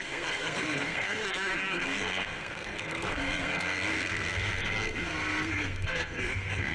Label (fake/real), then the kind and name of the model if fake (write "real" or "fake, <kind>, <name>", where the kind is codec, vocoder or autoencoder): fake, codec, SNAC